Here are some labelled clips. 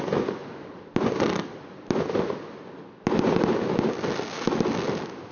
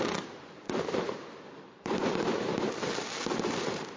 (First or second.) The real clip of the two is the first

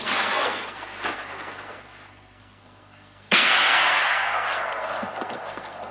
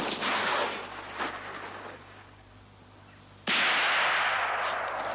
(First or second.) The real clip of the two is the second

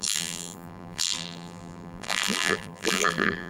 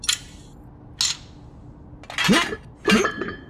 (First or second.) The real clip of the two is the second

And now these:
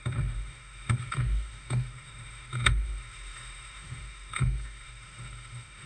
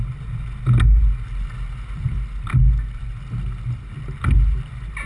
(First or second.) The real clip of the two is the second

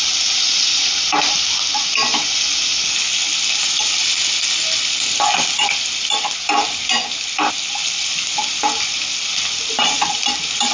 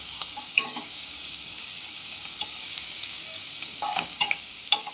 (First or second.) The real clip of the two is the first